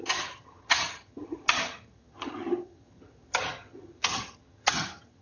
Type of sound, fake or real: fake